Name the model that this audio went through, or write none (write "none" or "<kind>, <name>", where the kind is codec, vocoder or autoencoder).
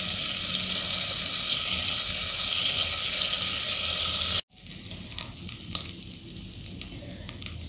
none